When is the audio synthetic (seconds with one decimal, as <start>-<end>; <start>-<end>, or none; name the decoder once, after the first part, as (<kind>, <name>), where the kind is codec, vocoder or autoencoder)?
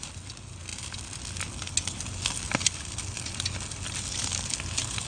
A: none